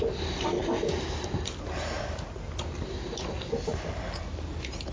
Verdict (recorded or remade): recorded